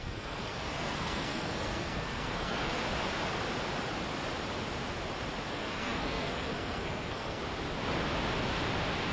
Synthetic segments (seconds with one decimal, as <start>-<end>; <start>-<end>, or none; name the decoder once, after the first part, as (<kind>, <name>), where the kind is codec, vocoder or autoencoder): 0.0-2.8 (codec, SNAC); 5.5-7.4